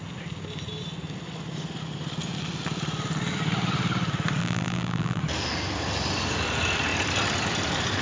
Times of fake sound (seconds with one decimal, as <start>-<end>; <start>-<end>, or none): 4.4-5.2